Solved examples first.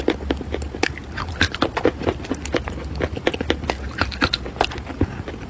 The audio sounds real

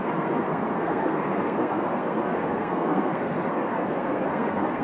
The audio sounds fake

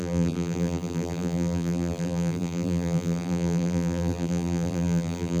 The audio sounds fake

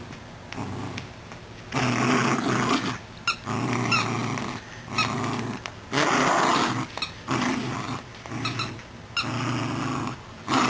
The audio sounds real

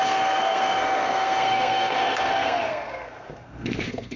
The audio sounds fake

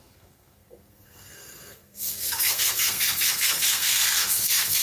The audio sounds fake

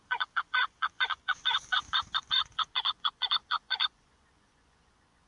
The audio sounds fake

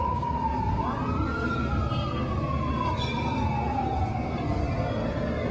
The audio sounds real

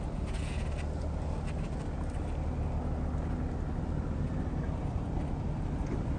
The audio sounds real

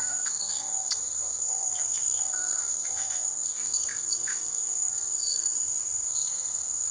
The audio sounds fake